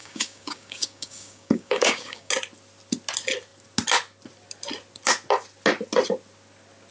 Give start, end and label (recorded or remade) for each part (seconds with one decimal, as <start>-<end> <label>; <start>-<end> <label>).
0.0-2.3 remade; 2.3-6.9 recorded